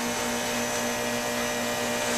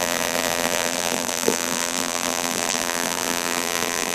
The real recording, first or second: first